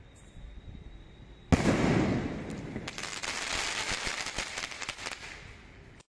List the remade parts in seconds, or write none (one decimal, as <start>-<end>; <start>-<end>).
none